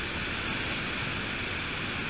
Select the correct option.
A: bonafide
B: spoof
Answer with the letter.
A